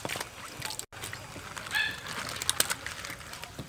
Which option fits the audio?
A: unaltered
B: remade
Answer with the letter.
A